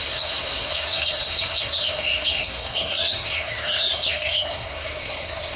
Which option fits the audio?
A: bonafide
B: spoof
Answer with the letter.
B